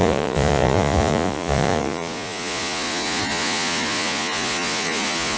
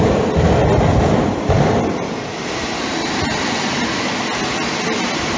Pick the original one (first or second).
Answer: second